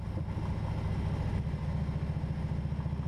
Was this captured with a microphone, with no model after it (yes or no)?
yes